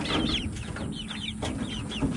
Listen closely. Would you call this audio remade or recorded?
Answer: recorded